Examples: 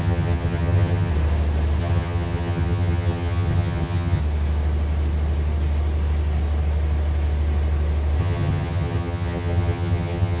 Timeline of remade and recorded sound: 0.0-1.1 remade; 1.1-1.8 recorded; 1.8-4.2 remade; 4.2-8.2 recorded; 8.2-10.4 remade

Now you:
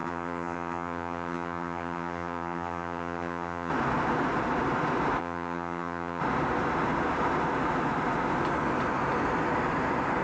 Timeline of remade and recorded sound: 0.0-3.7 remade; 3.7-5.2 recorded; 5.2-6.2 remade; 6.2-10.2 recorded